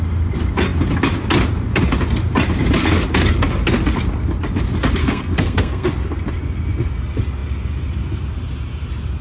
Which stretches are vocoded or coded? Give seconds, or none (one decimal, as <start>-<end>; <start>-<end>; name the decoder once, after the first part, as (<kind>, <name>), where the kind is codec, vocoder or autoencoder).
5.0-5.9 (codec, SNAC)